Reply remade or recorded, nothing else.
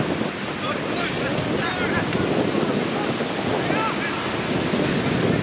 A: recorded